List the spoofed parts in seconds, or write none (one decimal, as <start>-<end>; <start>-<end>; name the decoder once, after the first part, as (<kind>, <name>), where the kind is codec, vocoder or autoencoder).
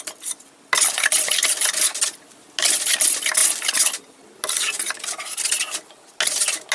none